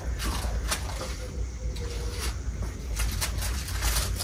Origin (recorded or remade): recorded